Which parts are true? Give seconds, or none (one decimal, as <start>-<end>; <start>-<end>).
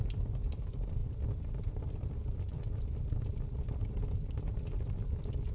0.0-5.5